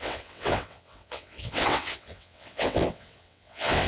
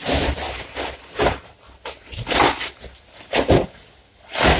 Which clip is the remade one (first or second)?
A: first